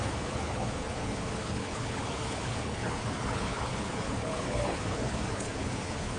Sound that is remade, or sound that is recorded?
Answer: remade